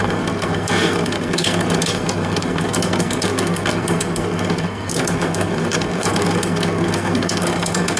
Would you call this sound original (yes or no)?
no